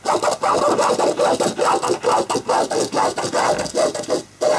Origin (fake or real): real